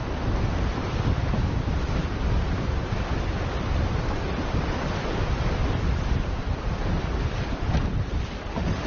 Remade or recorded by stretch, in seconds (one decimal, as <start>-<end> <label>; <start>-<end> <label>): 0.0-2.0 recorded; 2.0-3.4 remade; 3.4-5.6 recorded; 5.6-6.4 remade; 6.4-8.9 recorded